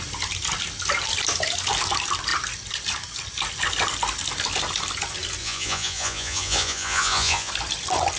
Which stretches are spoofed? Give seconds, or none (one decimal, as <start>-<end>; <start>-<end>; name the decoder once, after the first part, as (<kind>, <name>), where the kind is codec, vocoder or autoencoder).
5.4-7.5 (vocoder, Vocos)